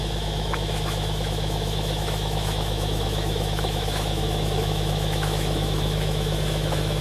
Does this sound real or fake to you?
fake